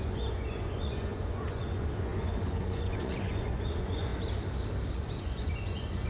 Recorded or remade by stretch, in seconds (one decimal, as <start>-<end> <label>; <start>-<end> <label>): 0.0-4.1 remade; 4.1-5.0 recorded; 5.0-6.1 remade